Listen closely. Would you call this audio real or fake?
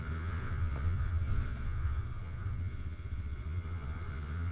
fake